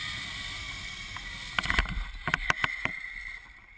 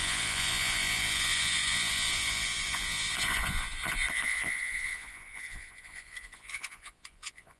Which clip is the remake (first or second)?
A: second